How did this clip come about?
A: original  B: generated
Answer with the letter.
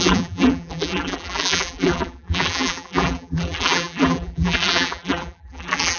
B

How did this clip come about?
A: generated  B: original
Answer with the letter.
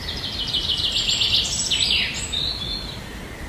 B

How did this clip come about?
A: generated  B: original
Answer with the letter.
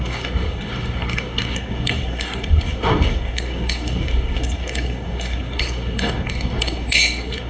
A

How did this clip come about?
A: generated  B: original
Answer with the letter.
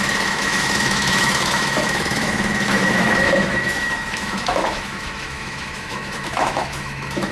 A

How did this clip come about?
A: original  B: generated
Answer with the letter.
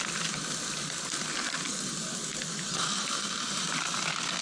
A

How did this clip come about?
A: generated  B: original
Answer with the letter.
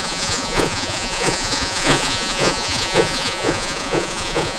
A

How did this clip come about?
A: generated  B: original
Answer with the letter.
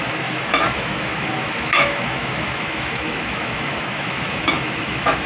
A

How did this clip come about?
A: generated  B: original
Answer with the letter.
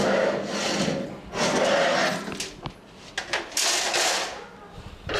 B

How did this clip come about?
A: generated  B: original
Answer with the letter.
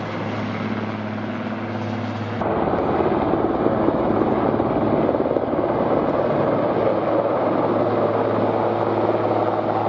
B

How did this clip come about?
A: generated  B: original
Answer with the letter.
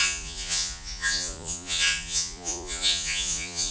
A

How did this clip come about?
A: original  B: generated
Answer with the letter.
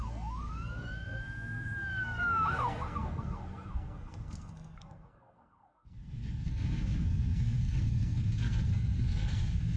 B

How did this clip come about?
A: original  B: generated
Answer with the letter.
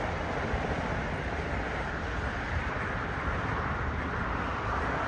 A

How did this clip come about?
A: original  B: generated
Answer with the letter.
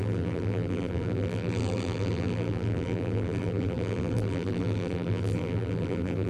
B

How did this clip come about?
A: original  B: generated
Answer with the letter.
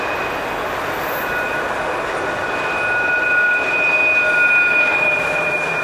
A